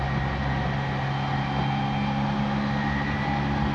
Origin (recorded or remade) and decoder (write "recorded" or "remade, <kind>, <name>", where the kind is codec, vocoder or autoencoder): recorded